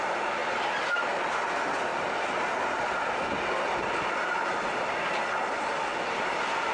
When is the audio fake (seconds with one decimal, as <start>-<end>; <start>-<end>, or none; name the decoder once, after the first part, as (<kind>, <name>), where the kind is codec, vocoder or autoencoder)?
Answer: none